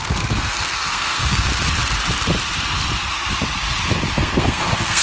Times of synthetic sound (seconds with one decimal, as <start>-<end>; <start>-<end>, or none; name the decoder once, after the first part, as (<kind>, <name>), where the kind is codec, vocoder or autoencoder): 0.0-1.5 (codec, SNAC); 4.2-5.0